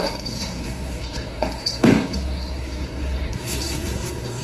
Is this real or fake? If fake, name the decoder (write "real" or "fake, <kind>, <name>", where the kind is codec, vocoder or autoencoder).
fake, codec, SNAC